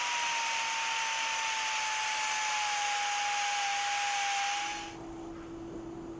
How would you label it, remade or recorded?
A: recorded